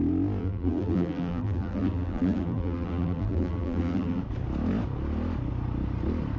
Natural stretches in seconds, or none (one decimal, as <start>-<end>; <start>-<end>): 0.0-0.4; 4.2-6.4